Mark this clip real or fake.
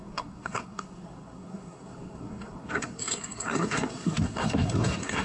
fake